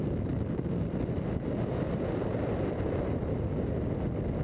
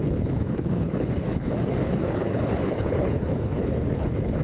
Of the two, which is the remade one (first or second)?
second